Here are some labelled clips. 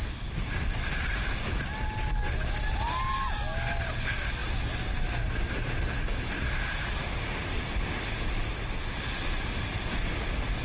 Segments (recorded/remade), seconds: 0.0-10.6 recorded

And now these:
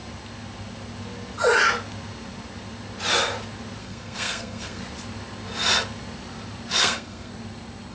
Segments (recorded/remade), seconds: 0.0-3.8 recorded; 3.8-4.8 remade; 4.8-6.8 recorded; 6.8-7.3 remade; 7.3-7.9 recorded

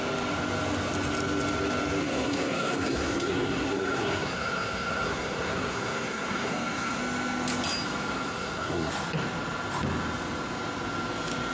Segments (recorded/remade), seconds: 0.0-2.0 recorded; 2.0-7.0 remade; 7.0-8.1 recorded; 8.1-8.9 remade; 8.9-11.5 recorded

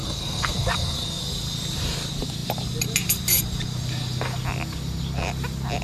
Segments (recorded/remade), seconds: 0.0-1.2 remade; 1.2-5.8 recorded

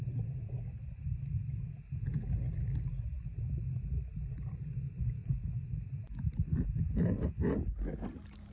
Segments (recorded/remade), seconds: 0.0-8.5 recorded

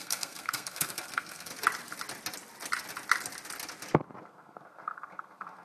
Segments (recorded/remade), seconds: 0.0-1.5 remade; 1.5-4.2 recorded; 4.2-5.6 remade

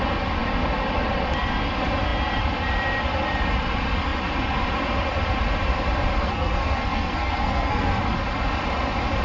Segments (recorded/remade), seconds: 0.0-6.2 recorded; 6.2-8.0 remade; 8.0-9.2 recorded

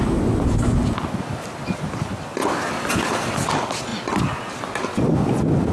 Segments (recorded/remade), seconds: 0.0-5.7 recorded